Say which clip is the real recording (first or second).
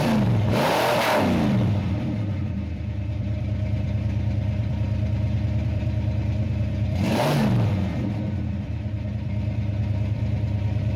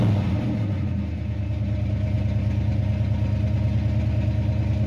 second